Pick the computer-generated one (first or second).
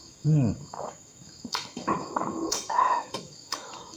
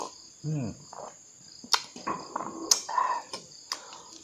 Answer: first